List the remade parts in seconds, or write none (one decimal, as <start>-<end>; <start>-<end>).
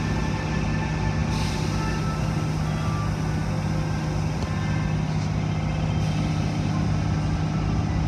none